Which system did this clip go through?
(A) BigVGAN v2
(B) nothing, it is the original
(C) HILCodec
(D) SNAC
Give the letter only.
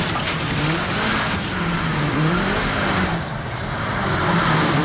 A